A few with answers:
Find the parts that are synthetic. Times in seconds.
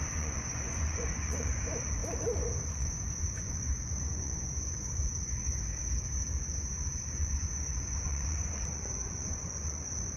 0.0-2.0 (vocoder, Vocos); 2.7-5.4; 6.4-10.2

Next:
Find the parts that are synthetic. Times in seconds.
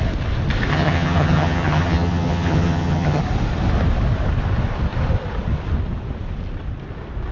0.7-3.2 (vocoder, HiFi-GAN)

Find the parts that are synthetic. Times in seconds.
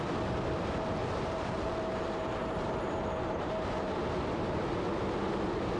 1.0-3.8 (vocoder, BigVGAN v2)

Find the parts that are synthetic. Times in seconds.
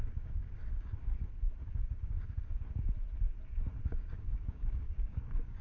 0.0-0.6 (codec, DAC); 3.9-5.6